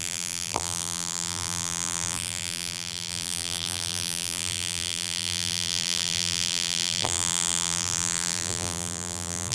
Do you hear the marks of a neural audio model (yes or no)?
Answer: yes